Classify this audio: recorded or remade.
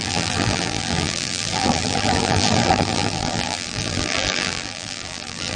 remade